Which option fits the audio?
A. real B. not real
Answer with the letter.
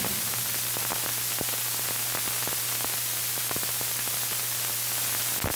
A